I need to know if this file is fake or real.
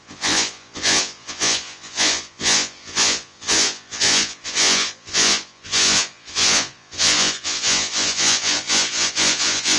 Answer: fake